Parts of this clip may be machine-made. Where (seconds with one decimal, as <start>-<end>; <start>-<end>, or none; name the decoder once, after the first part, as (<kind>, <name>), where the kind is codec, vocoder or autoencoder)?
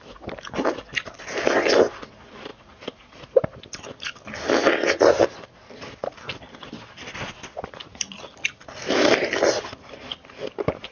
none